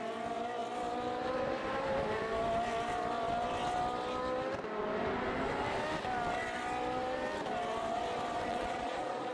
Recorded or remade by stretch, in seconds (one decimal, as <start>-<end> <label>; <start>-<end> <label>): 0.0-8.5 recorded; 8.5-9.3 remade

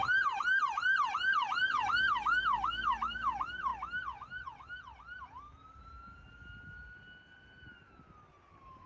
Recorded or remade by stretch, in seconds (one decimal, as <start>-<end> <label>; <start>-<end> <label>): 0.0-8.9 recorded

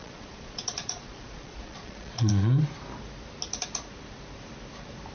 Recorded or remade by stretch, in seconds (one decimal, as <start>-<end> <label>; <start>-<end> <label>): 0.0-2.3 remade; 2.3-5.1 recorded